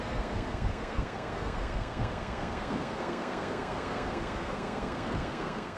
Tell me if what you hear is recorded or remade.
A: remade